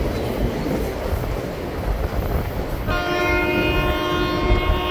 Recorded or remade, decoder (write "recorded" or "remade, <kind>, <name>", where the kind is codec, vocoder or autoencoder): recorded